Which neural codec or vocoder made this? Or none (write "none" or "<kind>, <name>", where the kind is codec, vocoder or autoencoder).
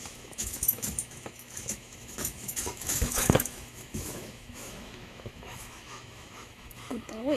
autoencoder, DAC-VAE